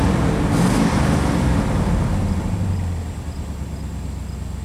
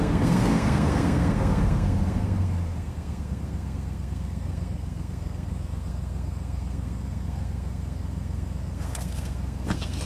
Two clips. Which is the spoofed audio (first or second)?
second